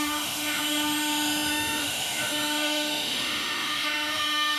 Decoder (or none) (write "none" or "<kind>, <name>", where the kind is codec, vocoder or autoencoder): autoencoder, DAC-VAE